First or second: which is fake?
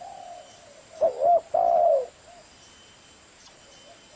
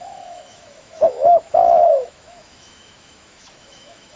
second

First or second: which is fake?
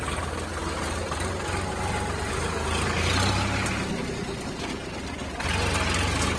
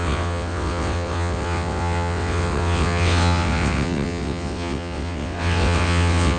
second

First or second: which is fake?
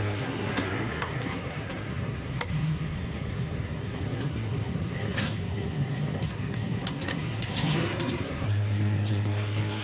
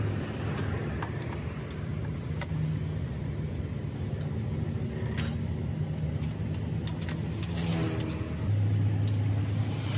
first